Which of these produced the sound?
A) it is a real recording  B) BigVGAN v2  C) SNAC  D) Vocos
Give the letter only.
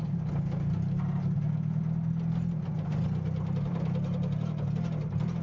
A